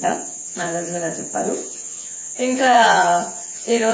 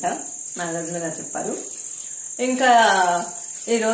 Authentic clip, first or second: second